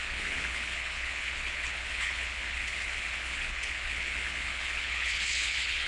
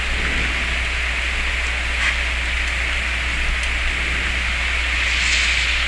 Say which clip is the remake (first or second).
first